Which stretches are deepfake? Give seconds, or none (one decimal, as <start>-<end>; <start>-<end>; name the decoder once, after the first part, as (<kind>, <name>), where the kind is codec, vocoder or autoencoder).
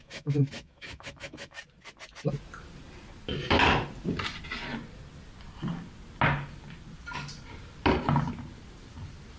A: 0.0-1.6 (autoencoder, DAC-VAE)